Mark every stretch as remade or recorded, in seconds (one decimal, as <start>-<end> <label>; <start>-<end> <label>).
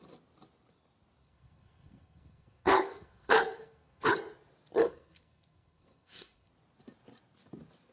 0.0-1.2 recorded; 1.2-4.1 remade; 4.1-4.8 recorded; 4.8-6.5 remade; 6.5-7.9 recorded